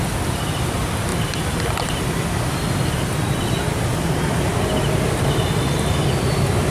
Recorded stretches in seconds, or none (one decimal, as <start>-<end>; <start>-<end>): 0.0-6.7